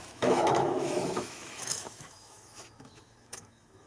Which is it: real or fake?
fake